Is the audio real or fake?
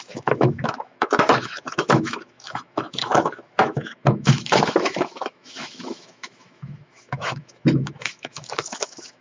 fake